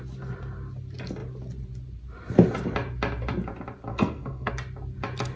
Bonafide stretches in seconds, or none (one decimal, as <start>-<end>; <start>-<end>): 0.0-3.9; 4.5-5.4